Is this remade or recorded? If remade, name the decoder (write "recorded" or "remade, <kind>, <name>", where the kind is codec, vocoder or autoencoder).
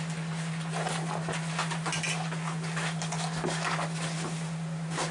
recorded